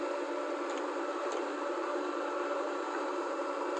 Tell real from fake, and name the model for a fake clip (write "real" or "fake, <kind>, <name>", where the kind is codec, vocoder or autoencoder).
fake, vocoder, BigVGAN v2